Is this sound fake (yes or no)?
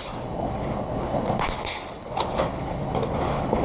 yes